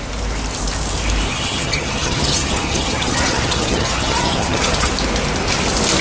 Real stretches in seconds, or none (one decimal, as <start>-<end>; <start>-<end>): 0.0-1.3; 4.9-6.0